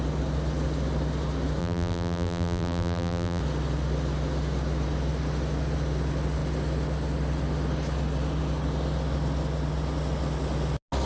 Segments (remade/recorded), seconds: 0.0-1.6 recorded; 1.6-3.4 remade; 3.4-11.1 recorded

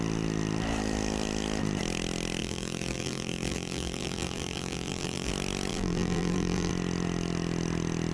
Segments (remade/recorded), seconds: 0.0-2.4 recorded; 2.4-5.3 remade; 5.3-5.7 recorded; 5.7-6.7 remade; 6.7-8.1 recorded

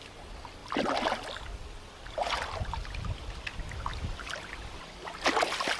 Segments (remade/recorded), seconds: 0.0-0.6 recorded; 0.6-3.4 remade; 3.4-3.9 recorded; 3.9-4.8 remade; 4.8-5.8 recorded

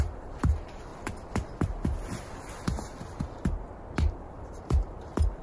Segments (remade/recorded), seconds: 0.0-0.9 remade; 0.9-4.1 recorded; 4.1-5.4 remade